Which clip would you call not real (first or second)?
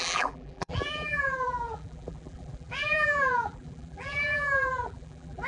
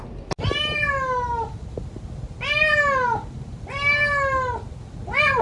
first